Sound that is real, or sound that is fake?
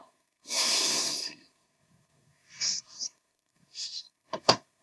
fake